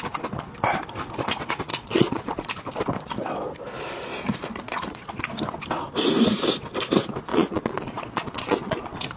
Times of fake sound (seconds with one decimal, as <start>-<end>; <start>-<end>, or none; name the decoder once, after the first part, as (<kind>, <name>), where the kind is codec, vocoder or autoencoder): 1.7-2.5 (vocoder, Vocos); 4.1-5.1; 7.3-9.2